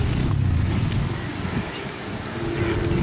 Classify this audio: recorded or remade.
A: recorded